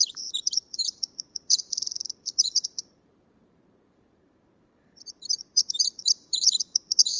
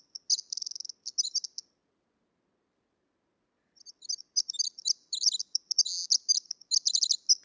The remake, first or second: first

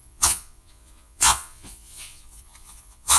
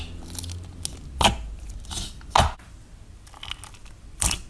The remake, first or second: first